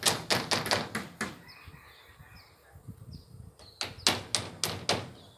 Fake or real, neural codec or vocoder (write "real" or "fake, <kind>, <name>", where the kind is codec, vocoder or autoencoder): real